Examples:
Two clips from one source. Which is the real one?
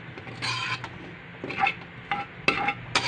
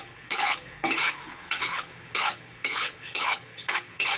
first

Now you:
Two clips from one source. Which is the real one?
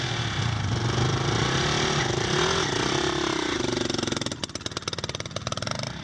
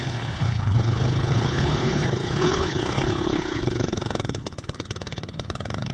first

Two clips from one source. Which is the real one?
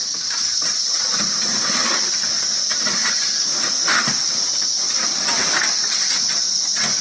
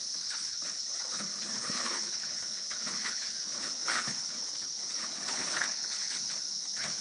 first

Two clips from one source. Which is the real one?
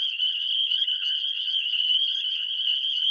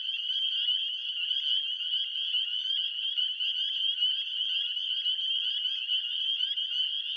second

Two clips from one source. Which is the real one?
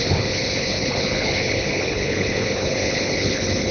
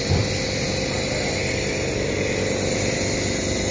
second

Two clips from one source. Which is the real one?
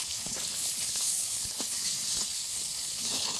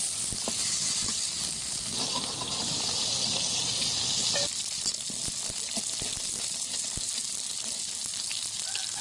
second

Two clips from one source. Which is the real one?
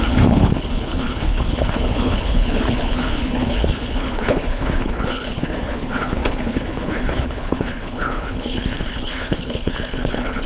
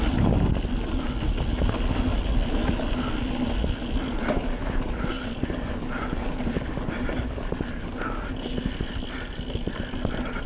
second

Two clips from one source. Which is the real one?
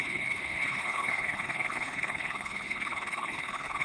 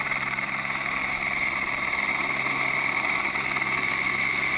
second